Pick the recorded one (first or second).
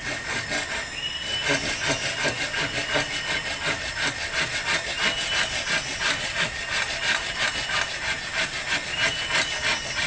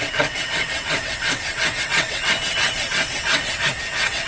first